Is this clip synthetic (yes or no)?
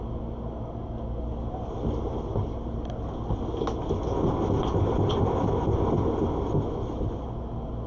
no